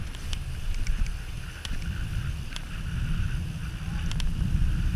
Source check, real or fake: fake